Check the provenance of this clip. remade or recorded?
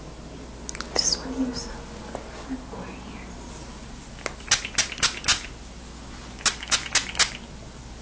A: recorded